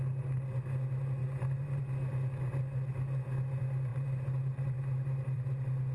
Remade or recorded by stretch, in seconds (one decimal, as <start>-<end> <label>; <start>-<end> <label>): 0.0-1.2 recorded; 1.2-1.8 remade; 1.8-3.9 recorded; 3.9-5.5 remade; 5.5-5.9 recorded